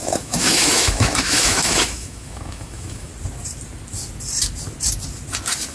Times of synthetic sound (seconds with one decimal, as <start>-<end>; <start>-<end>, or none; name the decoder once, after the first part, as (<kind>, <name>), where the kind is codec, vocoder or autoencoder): 0.0-3.1 (autoencoder, DAC-VAE)

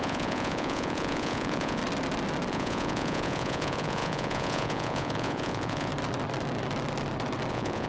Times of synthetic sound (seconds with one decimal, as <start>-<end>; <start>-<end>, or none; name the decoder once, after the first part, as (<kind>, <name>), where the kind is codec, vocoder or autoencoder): 0.0-1.8 (vocoder, Vocos); 2.5-5.9; 7.5-7.9

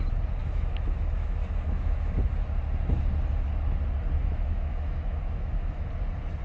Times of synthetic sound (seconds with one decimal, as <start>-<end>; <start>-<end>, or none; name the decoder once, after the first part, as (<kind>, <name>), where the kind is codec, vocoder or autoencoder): 0.4-2.2 (autoencoder, DAC-VAE); 4.2-5.9

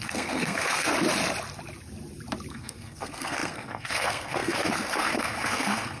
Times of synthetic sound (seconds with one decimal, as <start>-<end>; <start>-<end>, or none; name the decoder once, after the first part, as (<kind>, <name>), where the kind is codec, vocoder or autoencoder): 0.0-0.9 (codec, SNAC); 2.5-6.0

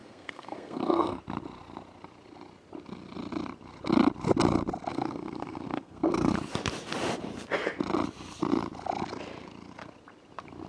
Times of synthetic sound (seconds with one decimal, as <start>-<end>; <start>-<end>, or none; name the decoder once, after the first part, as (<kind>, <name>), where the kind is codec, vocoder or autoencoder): 0.0-1.2 (codec, SNAC); 4.9-6.3

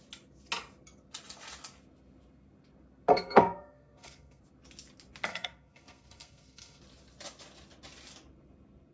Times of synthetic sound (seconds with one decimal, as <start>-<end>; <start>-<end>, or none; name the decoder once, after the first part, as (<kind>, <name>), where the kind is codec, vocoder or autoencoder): 3.1-4.4 (codec, SNAC); 5.3-6.8